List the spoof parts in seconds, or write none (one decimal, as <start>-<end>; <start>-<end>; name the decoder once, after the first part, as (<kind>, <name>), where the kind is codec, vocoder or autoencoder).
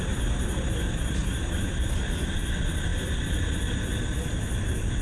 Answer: none